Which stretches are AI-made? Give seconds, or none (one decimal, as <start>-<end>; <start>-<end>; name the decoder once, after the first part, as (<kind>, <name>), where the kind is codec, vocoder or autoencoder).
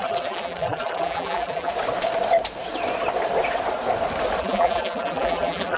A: 0.0-1.7 (vocoder, BigVGAN v2); 4.4-5.8